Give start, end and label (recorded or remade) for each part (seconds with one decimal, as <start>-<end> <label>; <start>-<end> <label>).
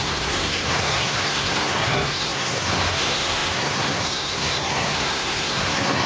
0.0-6.1 remade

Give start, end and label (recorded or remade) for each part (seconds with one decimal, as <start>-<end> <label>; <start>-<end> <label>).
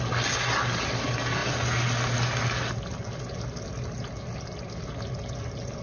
0.0-5.8 recorded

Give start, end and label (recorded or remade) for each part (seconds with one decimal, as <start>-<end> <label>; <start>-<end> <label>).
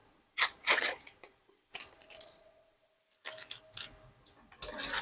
0.0-3.0 remade; 3.0-5.0 recorded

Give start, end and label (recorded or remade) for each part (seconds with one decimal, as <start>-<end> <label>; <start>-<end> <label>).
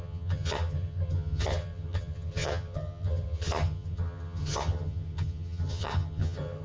0.0-6.6 remade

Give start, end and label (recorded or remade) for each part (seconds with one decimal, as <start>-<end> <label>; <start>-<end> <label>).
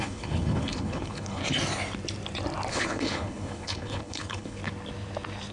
0.0-1.4 remade; 1.4-2.7 recorded; 2.7-4.6 remade; 4.6-5.5 recorded